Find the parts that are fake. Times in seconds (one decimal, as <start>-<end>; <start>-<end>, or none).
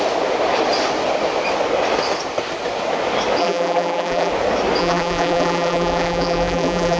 3.4-4.3; 4.8-7.0